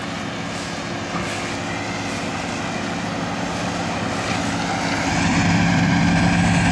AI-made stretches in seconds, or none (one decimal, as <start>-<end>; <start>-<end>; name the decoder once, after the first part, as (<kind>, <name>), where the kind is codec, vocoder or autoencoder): 2.3-6.2 (vocoder, BigVGAN v2)